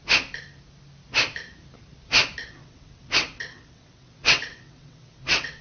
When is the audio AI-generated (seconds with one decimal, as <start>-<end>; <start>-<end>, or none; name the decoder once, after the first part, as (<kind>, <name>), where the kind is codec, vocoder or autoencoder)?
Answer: 2.4-5.6 (vocoder, WaveNeXt)